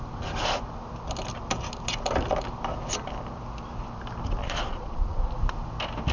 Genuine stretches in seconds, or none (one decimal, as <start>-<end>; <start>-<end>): 0.0-4.4; 5.2-6.1